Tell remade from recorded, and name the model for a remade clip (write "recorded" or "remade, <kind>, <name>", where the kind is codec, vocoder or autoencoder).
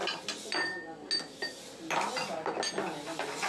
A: recorded